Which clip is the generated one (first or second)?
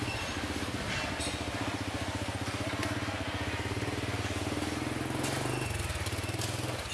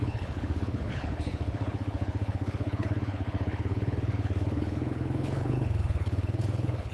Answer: second